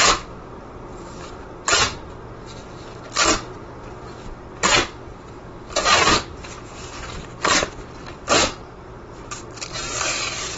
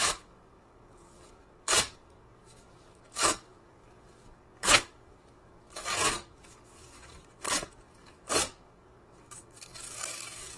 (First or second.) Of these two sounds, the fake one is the second